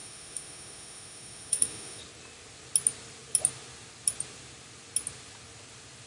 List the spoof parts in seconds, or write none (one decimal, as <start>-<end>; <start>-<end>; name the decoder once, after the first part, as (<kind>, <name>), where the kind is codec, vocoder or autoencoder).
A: 0.0-2.0 (autoencoder, DAC-VAE)